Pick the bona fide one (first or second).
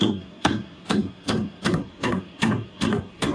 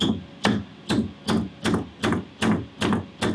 second